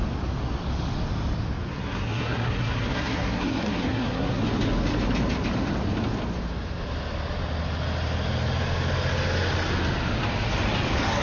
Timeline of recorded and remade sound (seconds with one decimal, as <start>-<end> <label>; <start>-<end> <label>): 0.0-1.7 recorded; 1.7-4.4 remade; 4.4-11.2 recorded